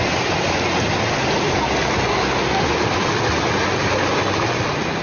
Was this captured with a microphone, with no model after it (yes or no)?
yes